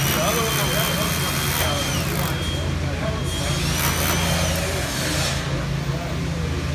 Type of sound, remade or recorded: recorded